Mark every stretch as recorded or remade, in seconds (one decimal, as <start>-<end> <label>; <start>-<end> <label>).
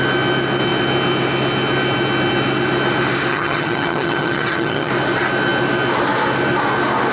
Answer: 0.0-3.3 recorded; 3.3-4.9 remade; 4.9-7.1 recorded